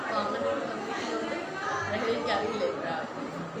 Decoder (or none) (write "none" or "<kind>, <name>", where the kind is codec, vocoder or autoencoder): none